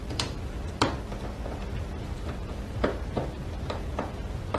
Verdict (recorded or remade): remade